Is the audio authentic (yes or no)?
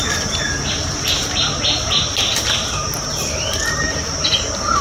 yes